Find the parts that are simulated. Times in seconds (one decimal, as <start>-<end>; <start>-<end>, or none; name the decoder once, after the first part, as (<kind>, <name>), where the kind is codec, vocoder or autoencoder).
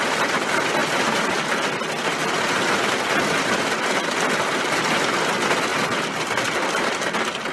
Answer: none